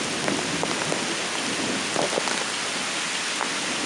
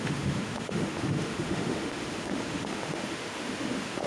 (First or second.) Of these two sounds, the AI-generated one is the second